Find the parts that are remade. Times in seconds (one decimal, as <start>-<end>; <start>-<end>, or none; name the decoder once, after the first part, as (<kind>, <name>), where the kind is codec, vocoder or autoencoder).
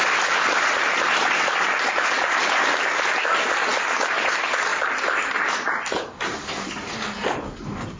0.0-1.3 (vocoder, BigVGAN v2); 4.7-6.7